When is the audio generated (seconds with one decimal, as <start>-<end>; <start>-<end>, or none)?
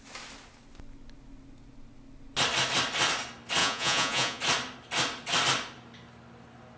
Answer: 3.6-4.4